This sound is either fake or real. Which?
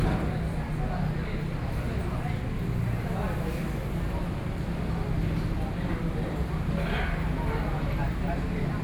real